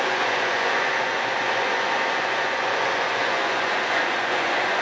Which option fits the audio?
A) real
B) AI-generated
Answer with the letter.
B